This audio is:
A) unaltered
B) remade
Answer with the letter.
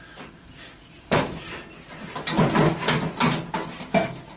A